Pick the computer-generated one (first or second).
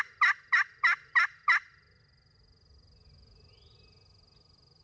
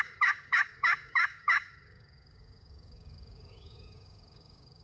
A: second